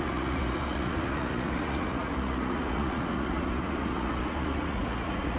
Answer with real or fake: fake